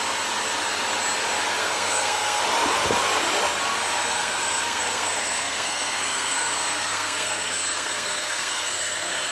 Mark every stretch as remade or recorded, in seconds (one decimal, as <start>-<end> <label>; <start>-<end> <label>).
0.0-1.6 recorded; 1.6-2.4 remade; 2.4-4.0 recorded; 4.0-9.3 remade